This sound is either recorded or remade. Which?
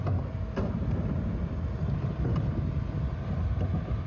recorded